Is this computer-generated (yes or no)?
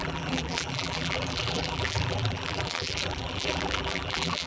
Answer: yes